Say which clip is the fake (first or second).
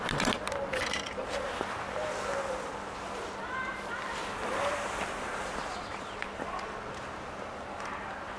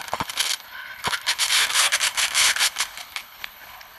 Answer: second